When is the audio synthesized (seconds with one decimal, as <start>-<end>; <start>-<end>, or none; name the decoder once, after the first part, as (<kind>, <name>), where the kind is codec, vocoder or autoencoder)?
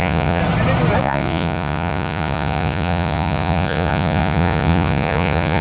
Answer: 0.0-0.4 (vocoder, Vocos); 1.0-5.6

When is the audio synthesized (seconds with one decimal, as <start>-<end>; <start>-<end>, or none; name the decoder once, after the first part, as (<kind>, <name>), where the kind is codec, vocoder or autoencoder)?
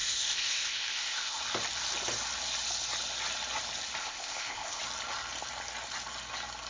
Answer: 0.0-1.4 (codec, ZipCodec); 4.0-4.8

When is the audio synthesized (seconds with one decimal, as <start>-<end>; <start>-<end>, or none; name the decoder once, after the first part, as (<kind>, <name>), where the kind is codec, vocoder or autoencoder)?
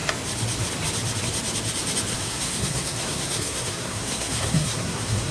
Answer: 2.1-5.3 (codec, SNAC)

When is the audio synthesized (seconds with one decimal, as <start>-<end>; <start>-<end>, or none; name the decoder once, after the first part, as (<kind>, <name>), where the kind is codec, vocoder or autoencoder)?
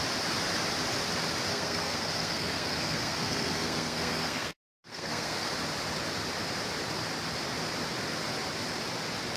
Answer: 1.5-5.5 (codec, SNAC)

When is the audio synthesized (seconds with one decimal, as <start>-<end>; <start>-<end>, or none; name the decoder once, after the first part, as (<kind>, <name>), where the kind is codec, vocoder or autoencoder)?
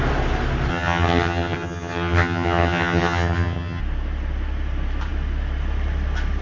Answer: 0.7-3.8 (vocoder, HiFi-GAN)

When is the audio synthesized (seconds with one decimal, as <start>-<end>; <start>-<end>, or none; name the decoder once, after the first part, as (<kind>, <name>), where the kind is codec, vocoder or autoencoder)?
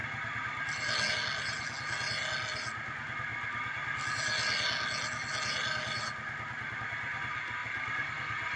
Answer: 7.6-8.6 (vocoder, BigVGAN v2)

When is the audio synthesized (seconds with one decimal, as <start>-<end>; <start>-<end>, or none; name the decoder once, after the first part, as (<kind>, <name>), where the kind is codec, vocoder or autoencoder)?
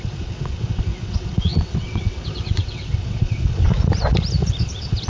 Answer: 0.0-3.7 (vocoder, WaveNeXt); 4.6-5.1